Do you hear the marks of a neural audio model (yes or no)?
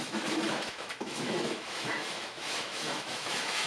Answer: yes